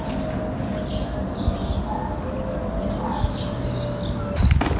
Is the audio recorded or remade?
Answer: recorded